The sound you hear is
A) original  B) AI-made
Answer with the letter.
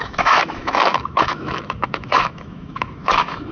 B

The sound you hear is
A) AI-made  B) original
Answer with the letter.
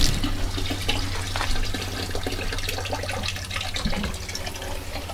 B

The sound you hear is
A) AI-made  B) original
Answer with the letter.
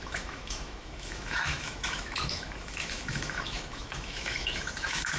A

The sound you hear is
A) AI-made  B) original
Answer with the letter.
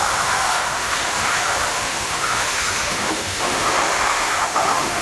A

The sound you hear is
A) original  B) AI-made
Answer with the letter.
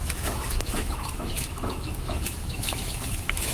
B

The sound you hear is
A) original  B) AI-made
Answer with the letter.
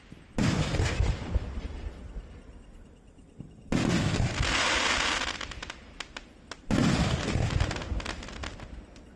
A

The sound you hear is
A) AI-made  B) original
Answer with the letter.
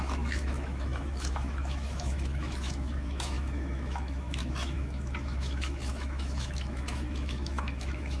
A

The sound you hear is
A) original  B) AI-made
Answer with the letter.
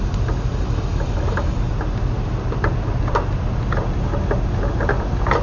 A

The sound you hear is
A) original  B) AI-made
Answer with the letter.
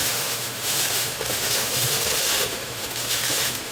B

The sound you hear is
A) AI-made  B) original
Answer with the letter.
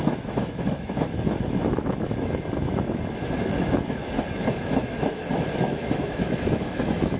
A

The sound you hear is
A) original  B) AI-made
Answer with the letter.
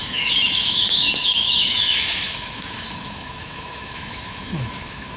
B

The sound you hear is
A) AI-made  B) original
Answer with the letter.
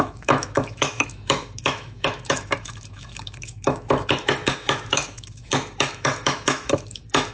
A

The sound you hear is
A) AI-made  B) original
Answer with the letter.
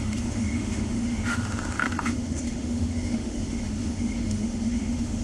A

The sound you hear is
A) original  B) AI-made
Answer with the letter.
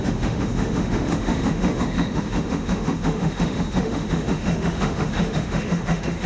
B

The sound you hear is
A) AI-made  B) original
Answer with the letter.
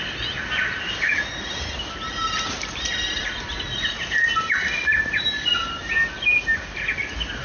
B